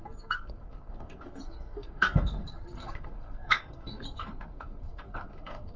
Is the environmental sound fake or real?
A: fake